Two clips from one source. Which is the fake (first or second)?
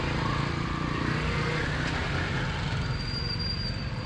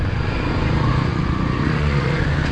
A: second